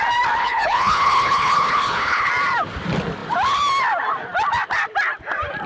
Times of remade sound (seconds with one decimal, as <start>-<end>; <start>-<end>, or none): 0.4-2.3